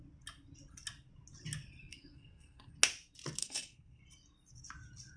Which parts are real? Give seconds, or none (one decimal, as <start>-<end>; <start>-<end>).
0.0-1.8; 2.7-3.4; 4.0-5.2